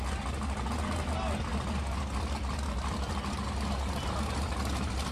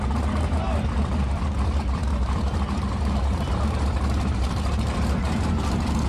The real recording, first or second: first